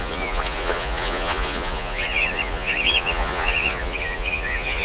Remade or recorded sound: remade